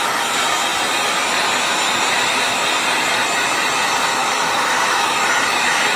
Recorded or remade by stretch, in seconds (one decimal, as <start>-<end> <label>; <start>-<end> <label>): 0.0-4.2 recorded; 4.2-5.2 remade; 5.2-6.0 recorded